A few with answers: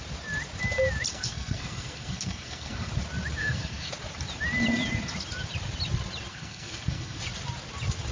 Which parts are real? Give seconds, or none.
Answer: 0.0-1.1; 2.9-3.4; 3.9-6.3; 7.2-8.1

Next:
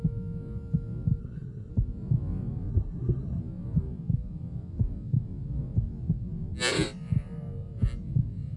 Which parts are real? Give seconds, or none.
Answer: 0.0-1.2; 1.7-2.7; 3.4-8.6

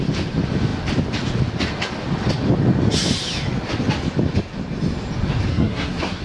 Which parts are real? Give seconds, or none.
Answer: 0.0-5.5

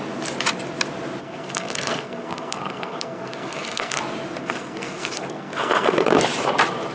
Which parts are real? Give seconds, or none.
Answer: 0.0-1.2; 4.0-4.4; 6.2-6.9

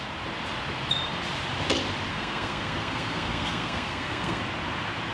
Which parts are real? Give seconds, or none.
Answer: 0.0-2.1; 4.4-5.1